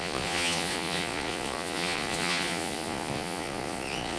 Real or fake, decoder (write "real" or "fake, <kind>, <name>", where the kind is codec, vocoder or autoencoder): fake, vocoder, Vocos